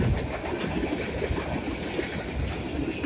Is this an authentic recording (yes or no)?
yes